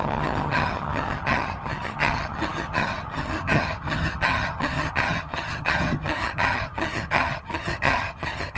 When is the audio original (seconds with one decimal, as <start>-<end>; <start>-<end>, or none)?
none